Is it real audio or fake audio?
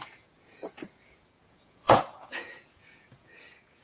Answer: fake